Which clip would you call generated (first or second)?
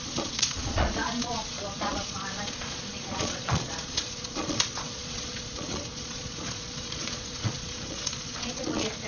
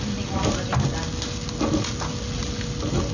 first